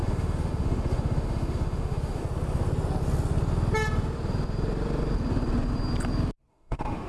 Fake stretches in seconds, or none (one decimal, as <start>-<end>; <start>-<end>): 0.0-2.2; 6.5-7.1

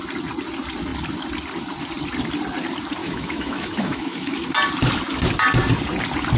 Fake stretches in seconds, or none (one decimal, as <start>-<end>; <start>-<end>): 3.0-4.5

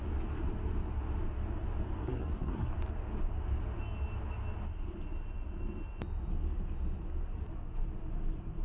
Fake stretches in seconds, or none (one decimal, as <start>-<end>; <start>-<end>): 2.0-2.7